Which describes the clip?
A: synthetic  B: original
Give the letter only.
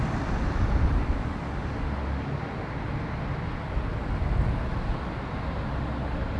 B